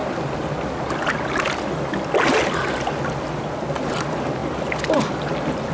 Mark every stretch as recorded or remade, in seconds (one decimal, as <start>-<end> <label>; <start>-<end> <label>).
0.0-5.7 recorded